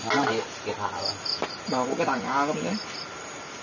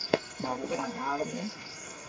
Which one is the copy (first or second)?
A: second